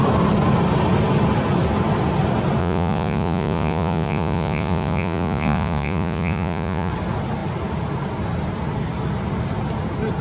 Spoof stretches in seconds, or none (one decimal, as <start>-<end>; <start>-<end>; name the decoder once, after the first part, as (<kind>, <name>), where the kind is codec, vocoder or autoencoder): 2.6-6.9 (vocoder, Vocos)